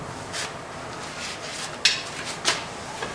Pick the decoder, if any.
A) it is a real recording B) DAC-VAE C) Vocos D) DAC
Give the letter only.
A